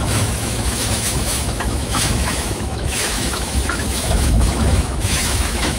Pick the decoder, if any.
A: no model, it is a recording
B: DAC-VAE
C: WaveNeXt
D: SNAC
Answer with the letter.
B